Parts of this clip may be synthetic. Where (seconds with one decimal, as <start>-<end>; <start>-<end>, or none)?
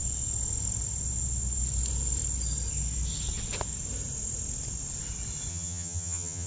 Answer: 5.5-6.5